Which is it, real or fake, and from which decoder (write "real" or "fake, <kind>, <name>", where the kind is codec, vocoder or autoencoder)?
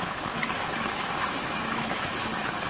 fake, autoencoder, DAC-VAE